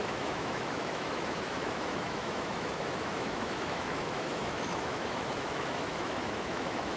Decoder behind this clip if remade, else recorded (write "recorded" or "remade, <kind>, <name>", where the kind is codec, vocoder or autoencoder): remade, autoencoder, DAC-VAE